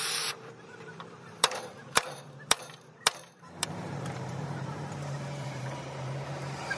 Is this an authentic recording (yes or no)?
no